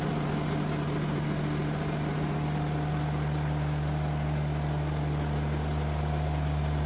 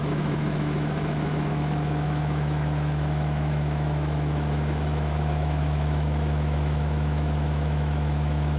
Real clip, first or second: first